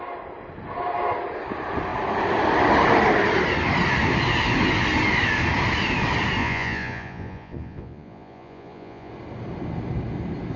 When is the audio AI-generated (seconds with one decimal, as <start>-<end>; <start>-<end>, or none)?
6.4-9.1